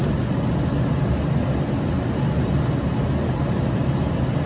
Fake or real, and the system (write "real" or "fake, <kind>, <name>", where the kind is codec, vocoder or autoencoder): real